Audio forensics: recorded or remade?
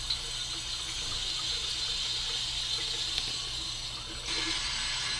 recorded